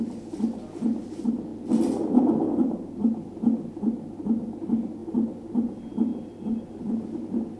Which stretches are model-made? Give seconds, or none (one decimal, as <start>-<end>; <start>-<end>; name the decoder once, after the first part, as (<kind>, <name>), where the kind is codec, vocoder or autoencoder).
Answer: 6.1-6.7 (vocoder, BigVGAN v2)